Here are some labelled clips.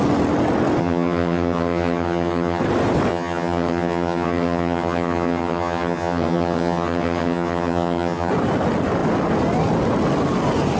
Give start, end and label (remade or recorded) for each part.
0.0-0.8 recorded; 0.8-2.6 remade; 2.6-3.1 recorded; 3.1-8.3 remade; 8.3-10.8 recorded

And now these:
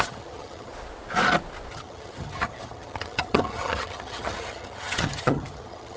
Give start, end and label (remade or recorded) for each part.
0.0-0.7 remade; 0.7-1.7 recorded; 1.7-6.0 remade

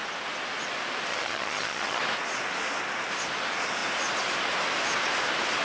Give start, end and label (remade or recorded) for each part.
0.0-1.1 recorded; 1.1-2.0 remade; 2.0-5.6 recorded